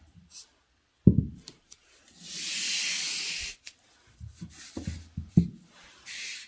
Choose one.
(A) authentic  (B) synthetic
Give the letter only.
A